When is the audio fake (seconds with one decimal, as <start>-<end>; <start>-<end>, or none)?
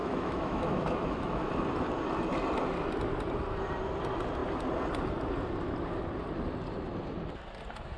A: 0.0-1.5